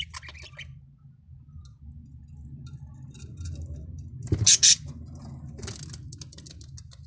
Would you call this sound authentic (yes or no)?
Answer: yes